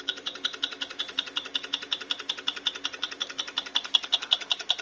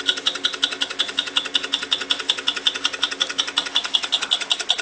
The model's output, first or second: first